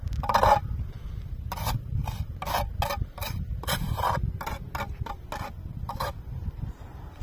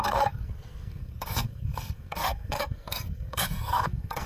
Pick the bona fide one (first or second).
first